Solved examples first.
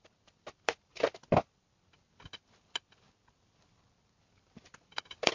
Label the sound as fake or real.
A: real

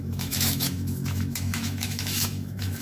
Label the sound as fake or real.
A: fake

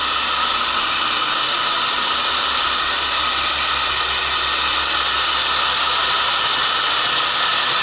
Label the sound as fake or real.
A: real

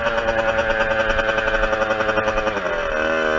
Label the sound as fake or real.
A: real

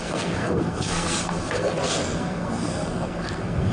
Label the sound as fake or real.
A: fake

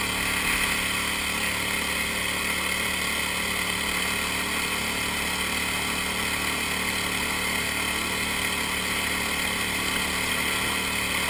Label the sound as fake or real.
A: real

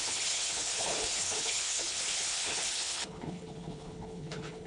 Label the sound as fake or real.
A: fake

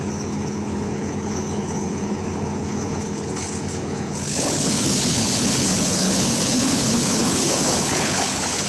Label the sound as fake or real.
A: fake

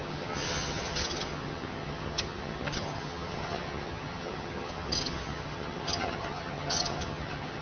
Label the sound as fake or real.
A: fake